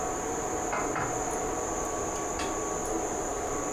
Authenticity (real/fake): real